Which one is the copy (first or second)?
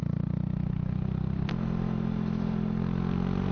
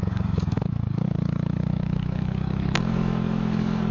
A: second